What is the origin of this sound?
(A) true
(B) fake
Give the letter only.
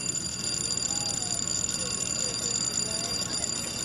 A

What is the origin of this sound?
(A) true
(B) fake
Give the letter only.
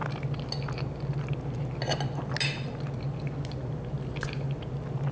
A